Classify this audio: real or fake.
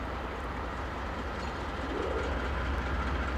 real